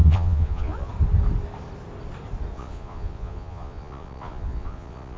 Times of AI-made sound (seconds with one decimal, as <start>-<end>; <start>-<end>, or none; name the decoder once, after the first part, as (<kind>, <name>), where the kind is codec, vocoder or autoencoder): 0.0-0.9 (vocoder, Vocos); 2.5-5.2

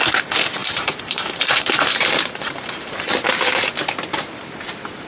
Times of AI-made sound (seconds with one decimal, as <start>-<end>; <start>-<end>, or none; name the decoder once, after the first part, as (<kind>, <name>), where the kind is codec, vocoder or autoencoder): 0.6-3.7 (vocoder, BigVGAN v2)

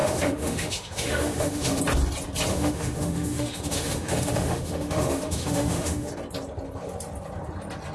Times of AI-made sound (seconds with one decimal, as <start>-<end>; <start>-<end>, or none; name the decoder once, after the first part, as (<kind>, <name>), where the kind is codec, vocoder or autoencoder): 0.0-1.8 (autoencoder, DAC-VAE); 2.5-6.1